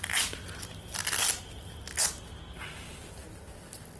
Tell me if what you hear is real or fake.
real